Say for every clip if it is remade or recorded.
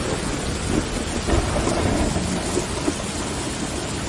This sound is recorded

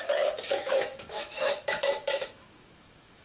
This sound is remade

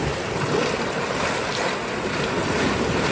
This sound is recorded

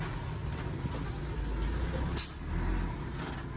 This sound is recorded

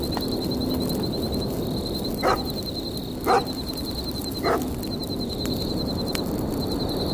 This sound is recorded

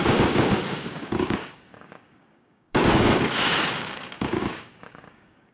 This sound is remade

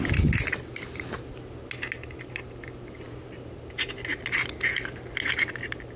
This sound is recorded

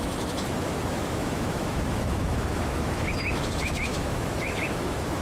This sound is remade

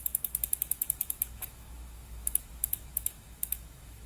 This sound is remade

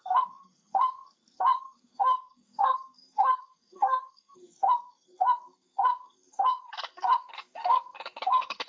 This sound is remade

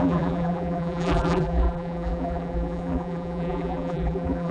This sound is remade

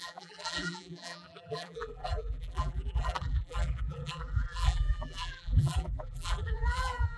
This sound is remade